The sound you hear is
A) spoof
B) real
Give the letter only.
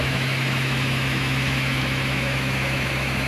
A